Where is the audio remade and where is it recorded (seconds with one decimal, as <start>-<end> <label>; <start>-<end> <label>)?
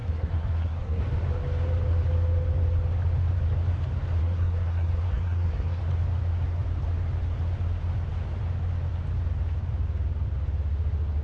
0.0-1.0 remade; 1.0-4.2 recorded; 4.2-5.8 remade; 5.8-11.2 recorded